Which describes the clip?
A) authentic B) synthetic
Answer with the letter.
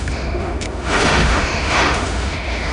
B